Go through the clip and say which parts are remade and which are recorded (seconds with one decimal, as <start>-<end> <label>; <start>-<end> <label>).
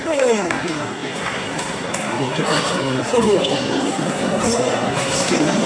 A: 0.0-5.7 remade